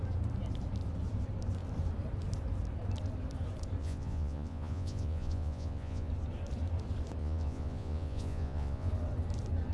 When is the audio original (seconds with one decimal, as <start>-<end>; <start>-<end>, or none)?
0.0-3.8; 6.1-7.2; 8.9-9.7